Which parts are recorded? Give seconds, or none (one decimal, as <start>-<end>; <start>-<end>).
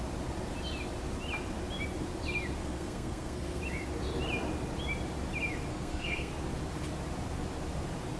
0.0-2.6; 3.6-5.7; 6.3-8.2